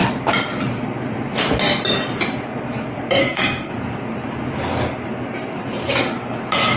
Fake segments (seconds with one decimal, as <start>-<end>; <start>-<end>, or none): 3.2-3.7